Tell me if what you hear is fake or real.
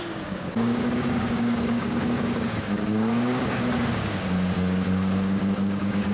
fake